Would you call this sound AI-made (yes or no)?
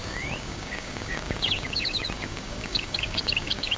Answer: yes